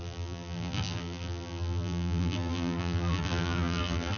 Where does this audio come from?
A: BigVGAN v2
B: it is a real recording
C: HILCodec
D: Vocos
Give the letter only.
A